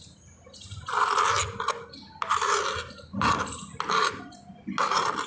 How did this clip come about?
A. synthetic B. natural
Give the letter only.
B